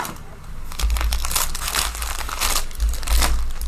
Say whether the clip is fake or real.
real